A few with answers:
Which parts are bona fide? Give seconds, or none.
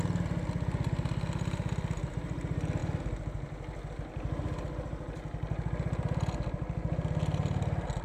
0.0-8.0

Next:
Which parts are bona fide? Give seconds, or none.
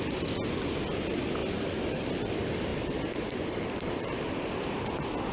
0.0-1.4; 2.1-2.7; 4.8-5.3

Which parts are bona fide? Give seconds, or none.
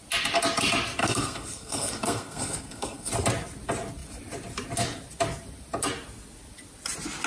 0.0-1.0; 3.1-7.3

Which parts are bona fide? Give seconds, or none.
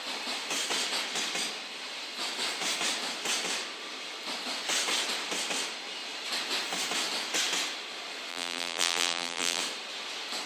0.0-8.3; 9.6-10.5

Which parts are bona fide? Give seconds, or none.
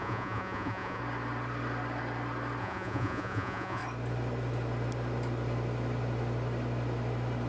1.0-2.6; 3.8-7.5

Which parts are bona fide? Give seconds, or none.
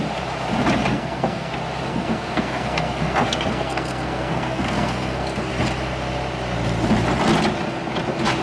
0.0-0.9; 1.5-1.9; 5.5-8.4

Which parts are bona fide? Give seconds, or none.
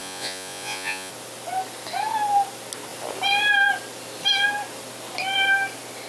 1.1-6.1